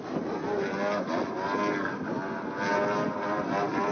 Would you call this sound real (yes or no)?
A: yes